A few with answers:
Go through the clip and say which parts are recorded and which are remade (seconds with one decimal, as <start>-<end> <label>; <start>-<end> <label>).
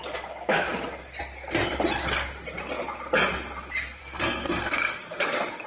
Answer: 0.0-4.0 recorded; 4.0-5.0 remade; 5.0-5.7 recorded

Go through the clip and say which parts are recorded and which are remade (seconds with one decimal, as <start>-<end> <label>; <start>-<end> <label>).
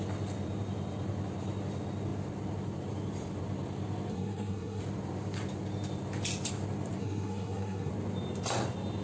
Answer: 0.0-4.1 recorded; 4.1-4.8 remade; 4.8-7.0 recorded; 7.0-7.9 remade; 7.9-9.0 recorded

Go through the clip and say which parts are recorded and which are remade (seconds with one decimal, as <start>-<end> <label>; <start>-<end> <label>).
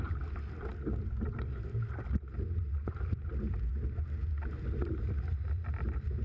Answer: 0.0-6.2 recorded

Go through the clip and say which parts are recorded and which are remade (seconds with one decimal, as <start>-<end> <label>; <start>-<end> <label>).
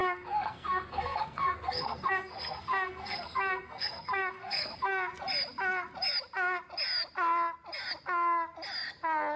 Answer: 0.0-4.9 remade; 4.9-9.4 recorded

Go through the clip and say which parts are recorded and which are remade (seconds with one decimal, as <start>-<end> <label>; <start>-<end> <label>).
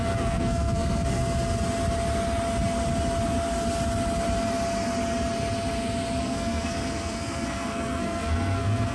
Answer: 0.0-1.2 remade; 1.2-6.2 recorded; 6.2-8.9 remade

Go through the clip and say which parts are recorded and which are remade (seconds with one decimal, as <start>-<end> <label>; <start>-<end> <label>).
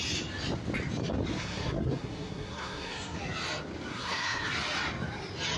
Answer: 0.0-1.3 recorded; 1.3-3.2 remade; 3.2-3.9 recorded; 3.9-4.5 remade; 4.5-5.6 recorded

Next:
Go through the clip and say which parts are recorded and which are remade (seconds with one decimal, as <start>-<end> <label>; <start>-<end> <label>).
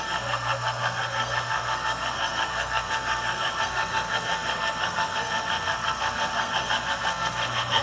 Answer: 0.0-7.8 remade